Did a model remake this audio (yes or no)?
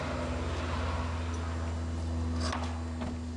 no